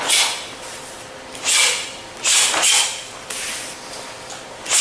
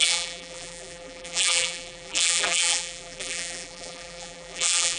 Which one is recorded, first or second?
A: first